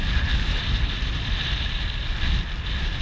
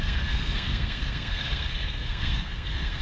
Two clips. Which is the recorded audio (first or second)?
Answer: first